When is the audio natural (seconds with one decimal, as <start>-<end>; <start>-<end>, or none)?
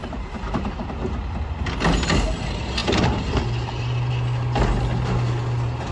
0.9-5.9